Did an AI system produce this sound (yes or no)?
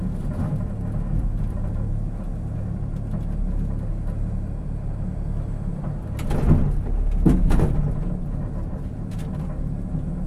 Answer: no